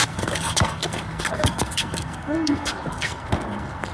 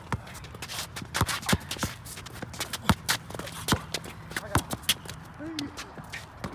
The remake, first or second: first